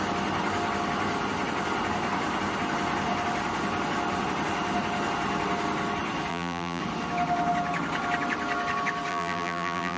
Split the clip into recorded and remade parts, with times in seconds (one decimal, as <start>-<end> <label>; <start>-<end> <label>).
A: 0.0-6.3 recorded; 6.3-6.8 remade; 6.8-9.1 recorded; 9.1-10.0 remade